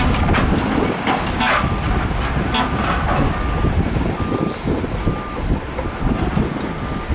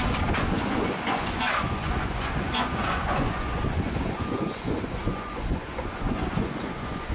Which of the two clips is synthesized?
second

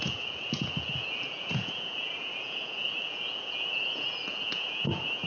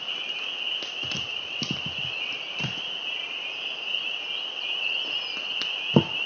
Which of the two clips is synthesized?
first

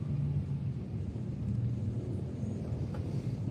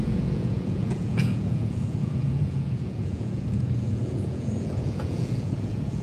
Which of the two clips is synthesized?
second